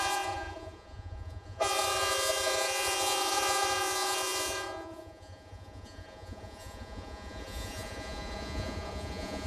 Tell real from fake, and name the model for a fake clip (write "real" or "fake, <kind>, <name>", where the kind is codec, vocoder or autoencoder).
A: fake, vocoder, Vocos